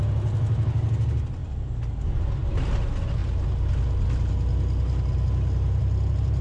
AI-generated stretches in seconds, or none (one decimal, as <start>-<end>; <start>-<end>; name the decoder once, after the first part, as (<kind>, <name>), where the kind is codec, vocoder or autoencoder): none